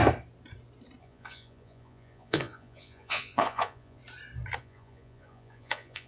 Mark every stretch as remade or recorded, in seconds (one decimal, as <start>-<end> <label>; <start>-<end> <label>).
0.0-1.0 recorded; 1.0-4.0 remade; 4.0-4.6 recorded; 4.6-6.1 remade